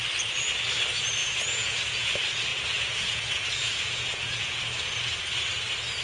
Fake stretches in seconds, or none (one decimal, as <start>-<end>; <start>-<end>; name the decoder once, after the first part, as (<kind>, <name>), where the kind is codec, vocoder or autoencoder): 1.2-2.1 (vocoder, Vocos); 2.5-4.6